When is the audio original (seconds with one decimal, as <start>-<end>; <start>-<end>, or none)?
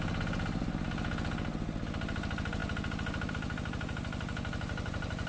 0.0-5.3